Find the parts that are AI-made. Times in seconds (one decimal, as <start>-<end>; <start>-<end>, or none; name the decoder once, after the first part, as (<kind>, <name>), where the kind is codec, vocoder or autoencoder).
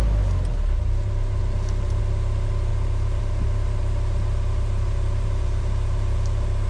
1.4-2.0 (vocoder, BigVGAN v2); 2.7-6.7